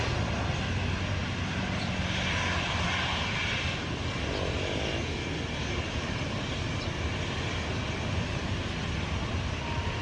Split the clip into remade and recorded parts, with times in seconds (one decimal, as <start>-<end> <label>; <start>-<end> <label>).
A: 0.0-1.2 recorded; 1.2-1.9 remade; 1.9-10.0 recorded